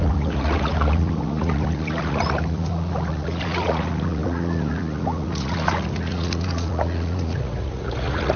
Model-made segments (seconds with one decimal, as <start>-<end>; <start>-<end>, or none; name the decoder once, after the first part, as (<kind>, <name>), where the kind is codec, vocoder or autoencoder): 0.0-8.4 (vocoder, Vocos)

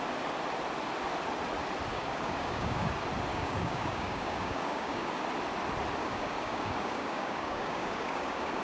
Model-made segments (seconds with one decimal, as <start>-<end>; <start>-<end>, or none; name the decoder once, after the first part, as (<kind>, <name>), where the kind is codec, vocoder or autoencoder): 1.9-2.9 (codec, DAC); 3.3-5.1; 6.0-8.6

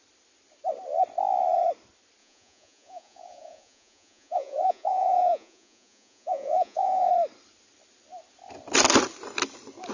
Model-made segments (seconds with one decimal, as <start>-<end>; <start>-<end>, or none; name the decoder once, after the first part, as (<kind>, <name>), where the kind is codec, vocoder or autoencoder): 2.2-7.1 (vocoder, Vocos)

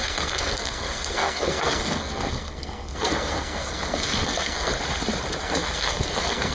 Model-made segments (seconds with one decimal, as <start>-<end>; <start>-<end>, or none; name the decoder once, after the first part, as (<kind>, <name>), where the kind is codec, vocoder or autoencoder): 0.0-4.7 (codec, SNAC); 5.4-6.5

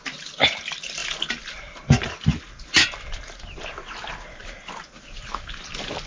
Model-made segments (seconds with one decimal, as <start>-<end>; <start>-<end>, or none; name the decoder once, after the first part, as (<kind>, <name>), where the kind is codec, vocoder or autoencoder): none

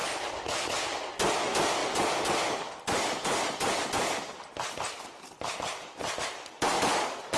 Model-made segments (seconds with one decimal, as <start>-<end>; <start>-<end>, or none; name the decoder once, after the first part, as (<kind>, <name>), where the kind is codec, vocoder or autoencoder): 0.0-0.9 (vocoder, BigVGAN v2); 1.8-6.2

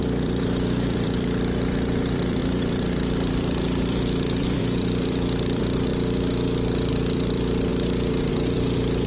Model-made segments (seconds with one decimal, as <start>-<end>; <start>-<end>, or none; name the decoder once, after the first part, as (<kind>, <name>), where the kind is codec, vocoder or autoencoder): 0.0-5.9 (vocoder, BigVGAN v2); 6.9-7.7; 8.3-9.1